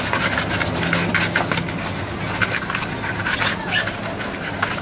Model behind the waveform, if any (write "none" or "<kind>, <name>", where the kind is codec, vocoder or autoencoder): none